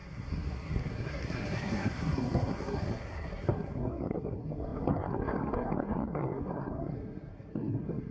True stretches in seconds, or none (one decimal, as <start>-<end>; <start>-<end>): none